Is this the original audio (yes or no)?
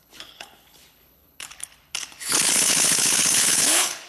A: no